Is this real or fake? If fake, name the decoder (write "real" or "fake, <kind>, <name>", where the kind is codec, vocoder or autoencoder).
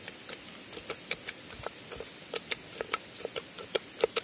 real